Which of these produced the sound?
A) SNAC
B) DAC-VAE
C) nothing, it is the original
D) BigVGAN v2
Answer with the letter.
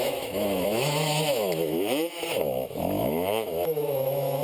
B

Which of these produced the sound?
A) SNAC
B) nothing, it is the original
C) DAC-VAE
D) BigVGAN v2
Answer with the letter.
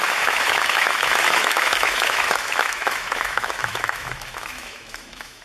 C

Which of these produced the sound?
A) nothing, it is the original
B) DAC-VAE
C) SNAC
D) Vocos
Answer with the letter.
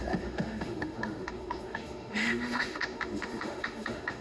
B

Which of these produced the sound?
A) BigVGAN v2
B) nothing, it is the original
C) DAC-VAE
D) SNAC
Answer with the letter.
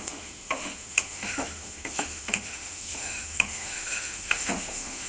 C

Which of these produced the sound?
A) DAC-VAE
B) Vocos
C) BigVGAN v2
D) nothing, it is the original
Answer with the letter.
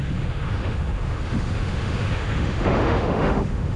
A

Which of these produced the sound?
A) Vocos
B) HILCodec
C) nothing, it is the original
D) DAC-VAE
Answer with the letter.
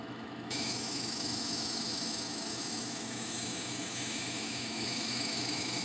D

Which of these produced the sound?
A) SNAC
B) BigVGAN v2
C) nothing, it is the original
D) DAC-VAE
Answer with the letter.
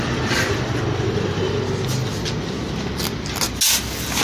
C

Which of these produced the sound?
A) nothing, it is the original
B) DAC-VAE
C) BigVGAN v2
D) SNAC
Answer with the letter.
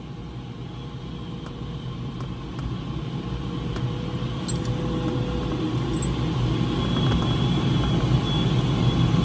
A